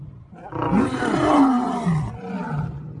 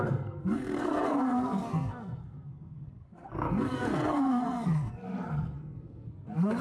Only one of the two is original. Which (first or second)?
first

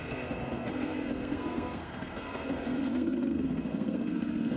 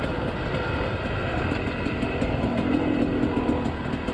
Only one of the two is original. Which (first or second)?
second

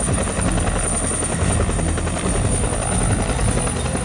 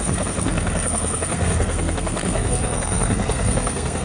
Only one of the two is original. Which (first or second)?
first